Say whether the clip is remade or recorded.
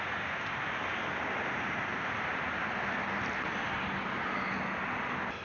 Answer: recorded